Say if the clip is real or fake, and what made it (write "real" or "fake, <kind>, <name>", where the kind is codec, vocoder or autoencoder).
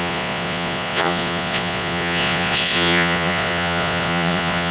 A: fake, vocoder, Vocos